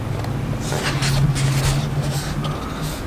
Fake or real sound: real